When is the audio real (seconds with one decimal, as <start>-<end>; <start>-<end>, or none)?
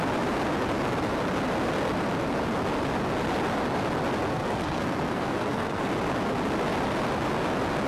0.0-4.3; 5.9-7.9